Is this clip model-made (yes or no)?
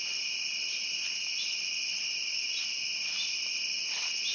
no